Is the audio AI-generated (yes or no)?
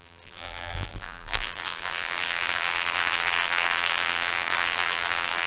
yes